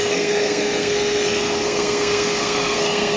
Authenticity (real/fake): fake